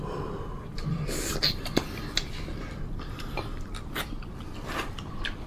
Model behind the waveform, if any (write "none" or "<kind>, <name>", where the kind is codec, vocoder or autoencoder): none